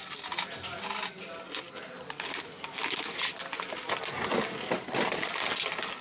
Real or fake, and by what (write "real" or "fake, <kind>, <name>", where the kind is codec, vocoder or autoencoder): real